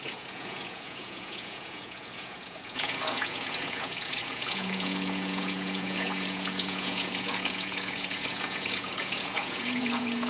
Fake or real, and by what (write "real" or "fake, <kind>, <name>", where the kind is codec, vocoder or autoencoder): fake, vocoder, Vocos